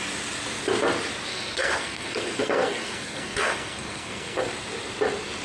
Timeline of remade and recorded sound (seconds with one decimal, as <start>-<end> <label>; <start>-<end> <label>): 0.0-1.3 recorded; 1.3-4.5 remade; 4.5-5.4 recorded